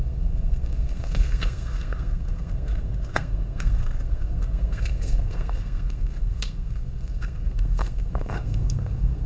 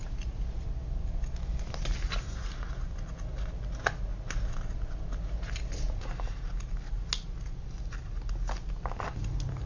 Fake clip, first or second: first